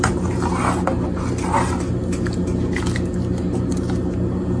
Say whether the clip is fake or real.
real